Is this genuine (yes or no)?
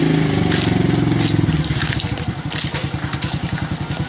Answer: yes